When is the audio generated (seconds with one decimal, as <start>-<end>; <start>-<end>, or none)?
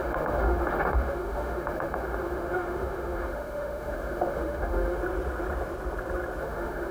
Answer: 0.0-5.0; 6.4-6.9